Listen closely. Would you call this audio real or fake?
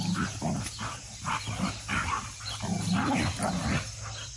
real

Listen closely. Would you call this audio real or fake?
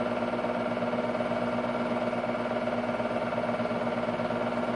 real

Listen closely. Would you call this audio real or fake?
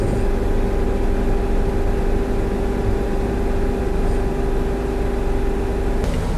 real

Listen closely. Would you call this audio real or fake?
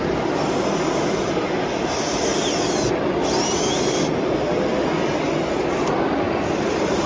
real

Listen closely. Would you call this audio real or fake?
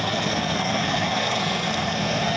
fake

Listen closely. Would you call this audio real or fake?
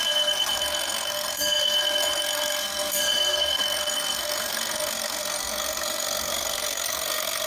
fake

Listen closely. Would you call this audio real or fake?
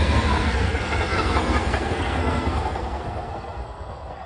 fake